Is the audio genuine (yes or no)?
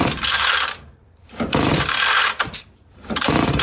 no